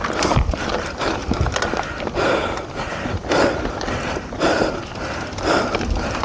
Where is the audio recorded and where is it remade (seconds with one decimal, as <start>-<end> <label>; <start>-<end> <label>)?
0.0-1.2 remade; 1.2-4.9 recorded; 4.9-6.2 remade